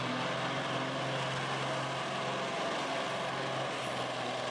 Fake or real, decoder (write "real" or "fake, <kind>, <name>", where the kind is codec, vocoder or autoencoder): real